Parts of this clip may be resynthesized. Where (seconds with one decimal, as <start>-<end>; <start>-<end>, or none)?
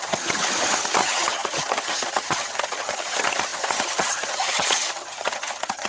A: 0.0-5.9